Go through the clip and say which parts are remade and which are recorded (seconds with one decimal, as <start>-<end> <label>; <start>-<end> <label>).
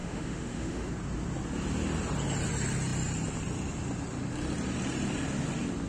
0.0-0.9 remade; 0.9-5.9 recorded